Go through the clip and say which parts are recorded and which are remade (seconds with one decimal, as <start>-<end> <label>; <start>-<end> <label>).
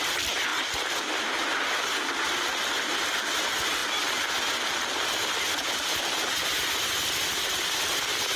0.0-8.4 recorded